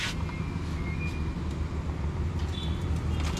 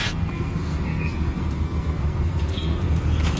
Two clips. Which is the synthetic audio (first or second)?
second